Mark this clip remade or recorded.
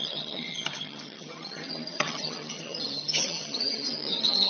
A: remade